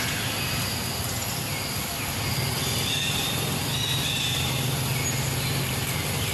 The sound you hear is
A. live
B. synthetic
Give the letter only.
A